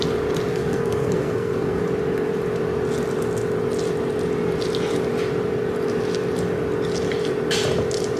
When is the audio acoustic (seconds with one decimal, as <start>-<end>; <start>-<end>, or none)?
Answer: 0.0-0.5; 1.8-8.2